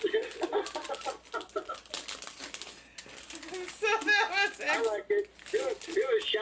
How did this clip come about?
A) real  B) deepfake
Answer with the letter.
A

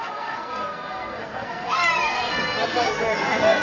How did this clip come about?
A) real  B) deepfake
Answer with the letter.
B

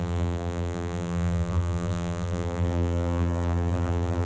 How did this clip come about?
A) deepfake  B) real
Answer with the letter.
A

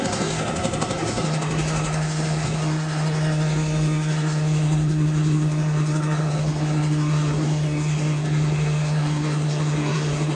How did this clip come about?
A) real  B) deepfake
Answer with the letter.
B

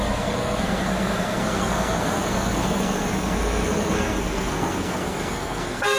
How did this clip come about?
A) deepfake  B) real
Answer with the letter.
A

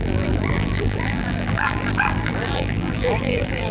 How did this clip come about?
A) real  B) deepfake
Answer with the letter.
B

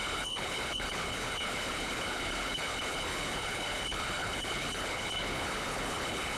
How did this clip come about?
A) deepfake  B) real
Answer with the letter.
A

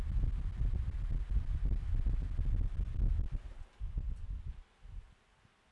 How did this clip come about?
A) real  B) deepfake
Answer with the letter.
A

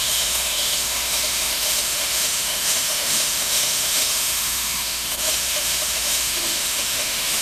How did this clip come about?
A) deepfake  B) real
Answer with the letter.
A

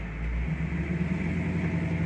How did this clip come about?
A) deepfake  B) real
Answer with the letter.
B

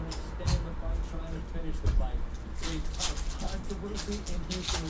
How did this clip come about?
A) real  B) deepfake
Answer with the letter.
A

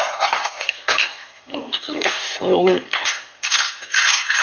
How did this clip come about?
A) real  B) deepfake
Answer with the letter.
B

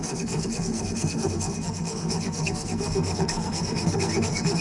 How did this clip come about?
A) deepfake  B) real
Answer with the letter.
A